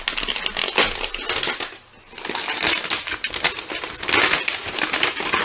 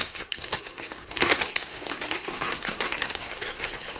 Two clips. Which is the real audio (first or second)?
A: first